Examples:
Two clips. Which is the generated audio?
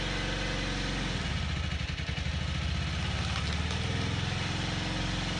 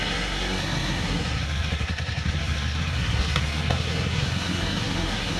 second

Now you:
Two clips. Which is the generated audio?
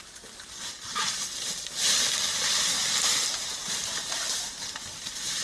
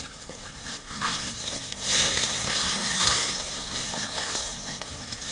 second